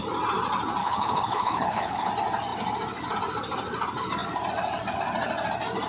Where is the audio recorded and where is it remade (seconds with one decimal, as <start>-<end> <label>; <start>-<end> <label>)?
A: 0.0-0.8 recorded; 0.8-2.1 remade; 2.1-5.9 recorded